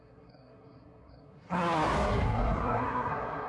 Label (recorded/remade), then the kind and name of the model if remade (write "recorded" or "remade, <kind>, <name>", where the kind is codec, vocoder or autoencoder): remade, codec, SNAC